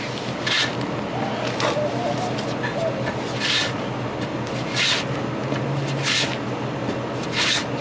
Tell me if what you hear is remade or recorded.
recorded